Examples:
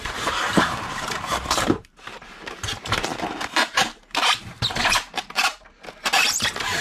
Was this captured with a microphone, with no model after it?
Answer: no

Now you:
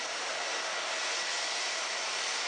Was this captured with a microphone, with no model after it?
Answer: yes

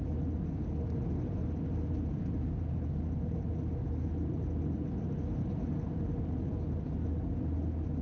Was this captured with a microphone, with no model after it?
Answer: yes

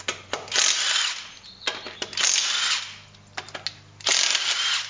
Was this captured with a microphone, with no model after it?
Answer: yes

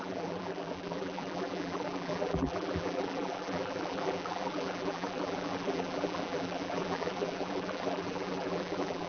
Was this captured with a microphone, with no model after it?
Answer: no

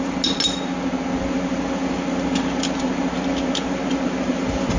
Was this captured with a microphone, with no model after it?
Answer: yes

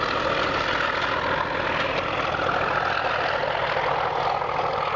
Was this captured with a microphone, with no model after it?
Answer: yes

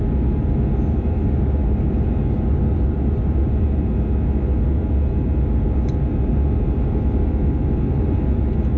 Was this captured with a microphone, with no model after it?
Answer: yes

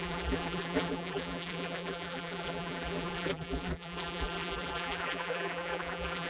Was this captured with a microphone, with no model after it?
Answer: no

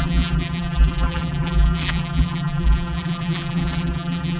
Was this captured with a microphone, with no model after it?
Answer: no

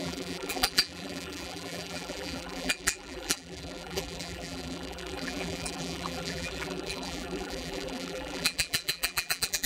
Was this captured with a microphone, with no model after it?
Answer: no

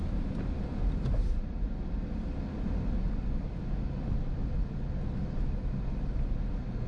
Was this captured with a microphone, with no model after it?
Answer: yes